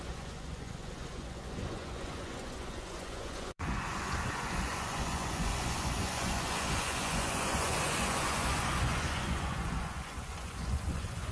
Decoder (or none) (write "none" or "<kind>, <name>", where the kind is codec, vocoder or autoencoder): vocoder, Vocos